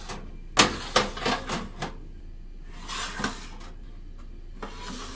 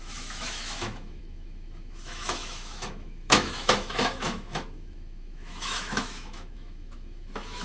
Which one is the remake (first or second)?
second